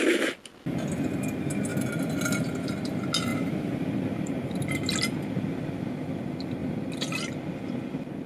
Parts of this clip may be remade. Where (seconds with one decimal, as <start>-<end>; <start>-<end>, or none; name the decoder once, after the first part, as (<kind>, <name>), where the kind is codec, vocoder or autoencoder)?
3.3-4.7 (vocoder, BigVGAN v2)